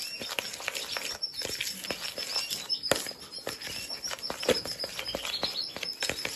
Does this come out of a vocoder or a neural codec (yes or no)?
no